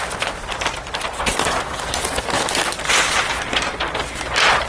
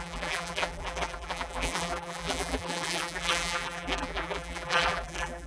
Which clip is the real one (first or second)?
first